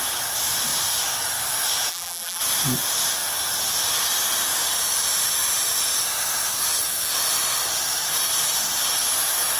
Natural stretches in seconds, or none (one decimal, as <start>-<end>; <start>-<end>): 0.0-1.9; 2.4-9.6